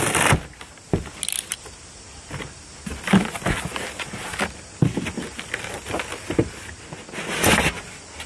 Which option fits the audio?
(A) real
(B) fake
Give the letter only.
A